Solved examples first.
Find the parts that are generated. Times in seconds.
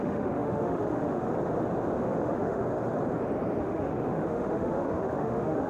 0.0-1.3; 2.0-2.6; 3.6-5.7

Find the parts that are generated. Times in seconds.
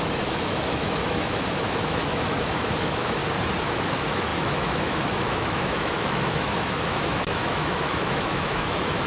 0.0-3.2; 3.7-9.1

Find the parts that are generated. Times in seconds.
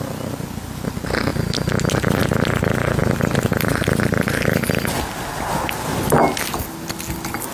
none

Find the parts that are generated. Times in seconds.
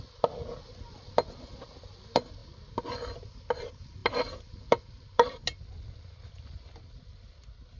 none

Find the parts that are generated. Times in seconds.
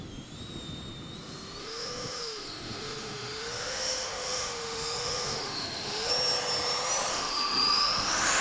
1.6-6.1; 7.1-8.4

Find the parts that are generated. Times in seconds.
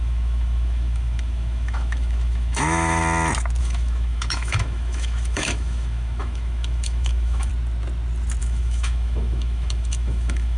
0.0-3.0; 3.6-7.5; 8.4-10.6